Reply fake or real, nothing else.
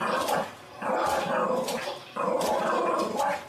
real